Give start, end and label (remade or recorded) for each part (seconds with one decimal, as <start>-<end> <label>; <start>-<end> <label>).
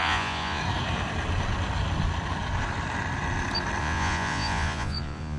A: 0.0-0.6 remade; 0.6-3.8 recorded; 3.8-5.4 remade